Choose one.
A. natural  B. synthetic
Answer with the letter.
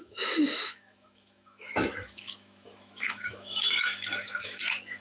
B